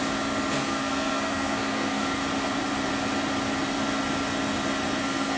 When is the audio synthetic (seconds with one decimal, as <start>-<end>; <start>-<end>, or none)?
0.5-2.2; 5.0-5.4